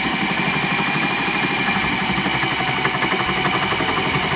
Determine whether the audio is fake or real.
real